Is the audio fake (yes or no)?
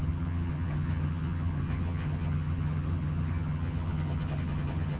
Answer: yes